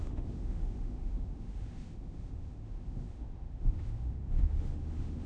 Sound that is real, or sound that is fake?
fake